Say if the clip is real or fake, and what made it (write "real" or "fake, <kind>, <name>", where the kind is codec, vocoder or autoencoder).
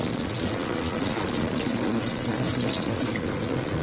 fake, vocoder, Vocos